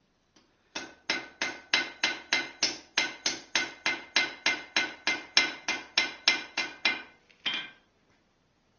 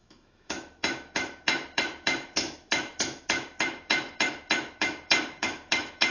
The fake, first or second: second